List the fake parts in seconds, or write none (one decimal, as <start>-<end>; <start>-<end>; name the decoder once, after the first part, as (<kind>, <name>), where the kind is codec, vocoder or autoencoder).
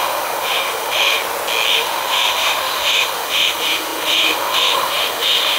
0.0-1.2 (autoencoder, DAC-VAE); 1.7-5.6